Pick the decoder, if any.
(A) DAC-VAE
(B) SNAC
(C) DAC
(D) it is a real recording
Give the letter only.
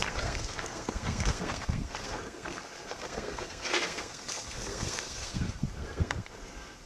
B